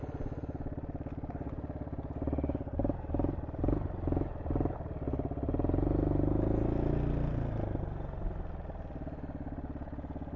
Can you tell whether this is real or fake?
real